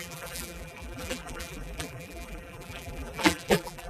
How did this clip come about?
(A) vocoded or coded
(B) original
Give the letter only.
A